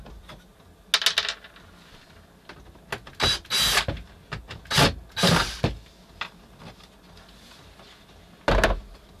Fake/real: real